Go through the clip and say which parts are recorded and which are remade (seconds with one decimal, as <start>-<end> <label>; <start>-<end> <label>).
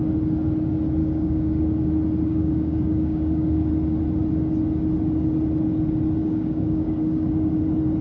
0.0-1.0 recorded; 1.0-1.9 remade; 1.9-2.3 recorded; 2.3-3.7 remade; 3.7-6.2 recorded; 6.2-7.6 remade; 7.6-8.0 recorded